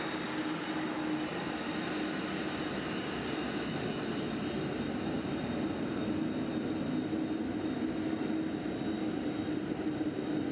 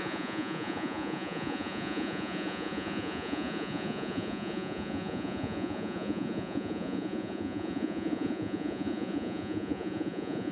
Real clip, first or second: first